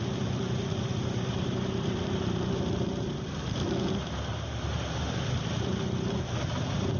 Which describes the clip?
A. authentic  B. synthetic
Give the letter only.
B